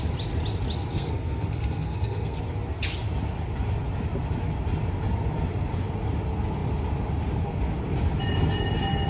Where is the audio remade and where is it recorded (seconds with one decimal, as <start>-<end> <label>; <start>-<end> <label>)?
0.0-0.9 recorded; 0.9-2.4 remade; 2.4-9.1 recorded